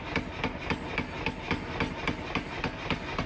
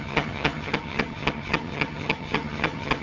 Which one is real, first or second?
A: first